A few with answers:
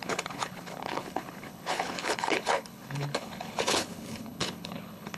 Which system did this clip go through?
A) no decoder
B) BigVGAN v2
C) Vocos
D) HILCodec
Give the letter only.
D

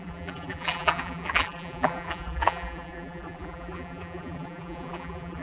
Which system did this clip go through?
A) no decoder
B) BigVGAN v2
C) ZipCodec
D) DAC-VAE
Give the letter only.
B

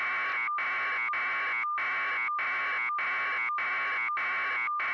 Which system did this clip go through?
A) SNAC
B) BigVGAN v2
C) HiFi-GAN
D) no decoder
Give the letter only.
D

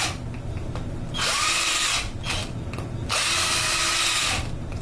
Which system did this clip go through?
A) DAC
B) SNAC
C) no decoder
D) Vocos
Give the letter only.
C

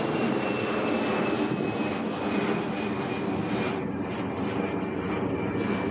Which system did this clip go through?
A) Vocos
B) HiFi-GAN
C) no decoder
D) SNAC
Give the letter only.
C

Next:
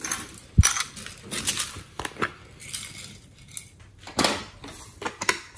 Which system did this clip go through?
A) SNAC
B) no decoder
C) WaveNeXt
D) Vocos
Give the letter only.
B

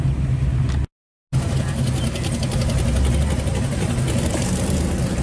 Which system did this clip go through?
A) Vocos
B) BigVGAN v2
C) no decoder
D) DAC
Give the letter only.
C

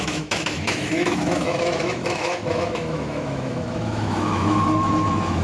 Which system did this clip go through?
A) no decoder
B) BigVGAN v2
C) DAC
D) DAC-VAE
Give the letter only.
D